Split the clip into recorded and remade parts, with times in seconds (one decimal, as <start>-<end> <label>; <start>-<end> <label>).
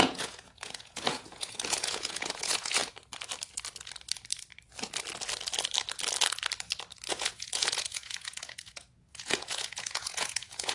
0.0-2.8 remade; 2.8-7.1 recorded; 7.1-10.7 remade